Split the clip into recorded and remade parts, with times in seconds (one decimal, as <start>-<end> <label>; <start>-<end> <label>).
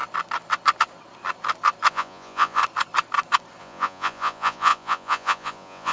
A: 0.0-1.9 recorded; 1.9-2.6 remade; 2.6-3.6 recorded; 3.6-5.9 remade